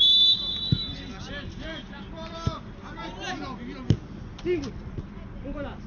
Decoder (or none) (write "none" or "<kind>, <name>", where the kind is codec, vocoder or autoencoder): none